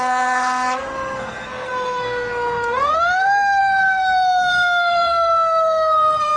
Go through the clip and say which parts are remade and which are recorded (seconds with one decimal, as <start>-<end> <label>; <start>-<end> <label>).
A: 0.0-6.4 remade